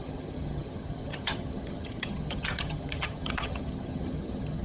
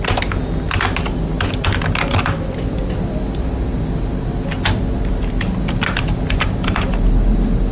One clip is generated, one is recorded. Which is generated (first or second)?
first